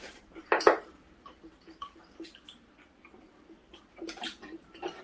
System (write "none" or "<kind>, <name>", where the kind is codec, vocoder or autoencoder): none